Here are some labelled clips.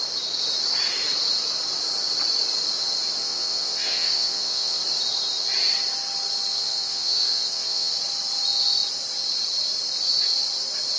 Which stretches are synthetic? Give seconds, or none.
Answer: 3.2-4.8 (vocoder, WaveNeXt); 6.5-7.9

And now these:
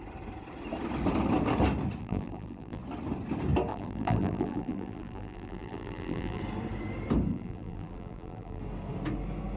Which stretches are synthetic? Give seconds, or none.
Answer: 2.0-2.8 (vocoder, BigVGAN v2); 3.7-6.4; 7.3-8.6

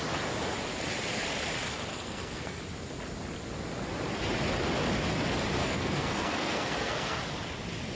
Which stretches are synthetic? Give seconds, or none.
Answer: 1.9-2.6 (codec, SNAC); 5.6-7.2